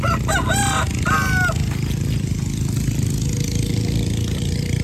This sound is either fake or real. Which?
real